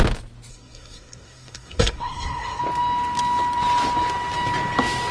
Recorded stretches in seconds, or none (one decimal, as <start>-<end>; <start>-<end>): 0.0-0.5; 2.6-5.1